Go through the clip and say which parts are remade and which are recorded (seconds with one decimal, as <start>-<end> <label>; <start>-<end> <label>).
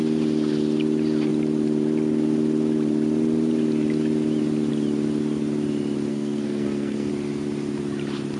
0.0-6.1 recorded; 6.1-7.1 remade; 7.1-8.4 recorded